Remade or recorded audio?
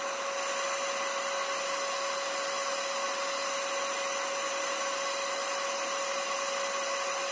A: recorded